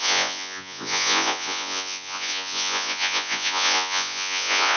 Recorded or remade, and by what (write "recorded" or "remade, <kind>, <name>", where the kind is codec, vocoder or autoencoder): remade, vocoder, Vocos